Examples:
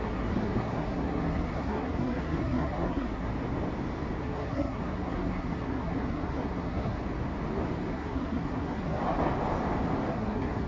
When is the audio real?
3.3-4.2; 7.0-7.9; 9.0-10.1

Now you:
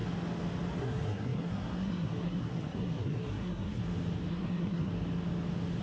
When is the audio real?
0.0-0.8; 3.8-4.3; 4.9-5.8